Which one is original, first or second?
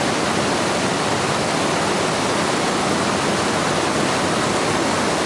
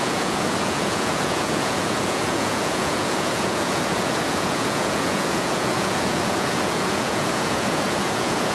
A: first